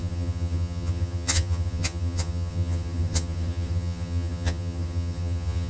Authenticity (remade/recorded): remade